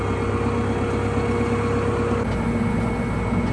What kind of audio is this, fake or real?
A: real